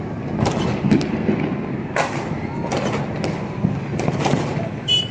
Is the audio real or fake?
real